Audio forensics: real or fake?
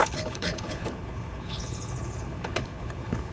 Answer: fake